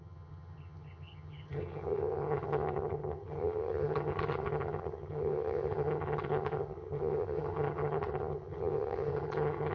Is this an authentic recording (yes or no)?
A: no